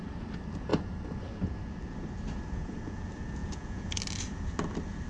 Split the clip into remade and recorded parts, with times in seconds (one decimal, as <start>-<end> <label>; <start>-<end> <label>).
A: 0.0-3.4 recorded; 3.4-4.0 remade; 4.0-5.1 recorded